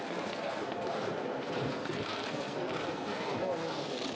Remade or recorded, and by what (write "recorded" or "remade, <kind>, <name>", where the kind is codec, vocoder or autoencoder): remade, codec, SNAC